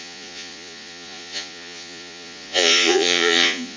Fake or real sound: fake